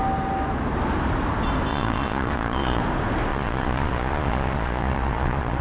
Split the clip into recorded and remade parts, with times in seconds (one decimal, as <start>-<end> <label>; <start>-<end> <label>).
0.0-1.7 recorded; 1.7-2.8 remade; 2.8-3.3 recorded; 3.3-5.6 remade